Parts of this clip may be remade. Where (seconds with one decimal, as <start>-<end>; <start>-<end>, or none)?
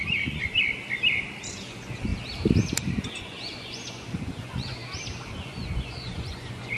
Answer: 0.0-0.4; 1.5-2.1; 3.0-4.8; 5.3-6.8